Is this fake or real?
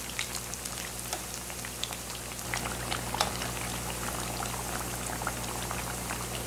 real